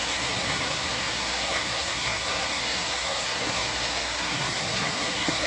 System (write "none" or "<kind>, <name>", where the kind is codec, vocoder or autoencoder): codec, SNAC